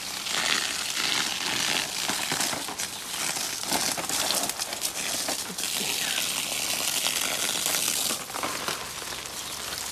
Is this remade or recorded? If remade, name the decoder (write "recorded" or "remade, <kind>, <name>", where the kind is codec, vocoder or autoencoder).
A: recorded